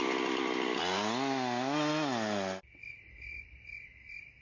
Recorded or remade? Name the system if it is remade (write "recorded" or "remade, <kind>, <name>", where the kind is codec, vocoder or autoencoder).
recorded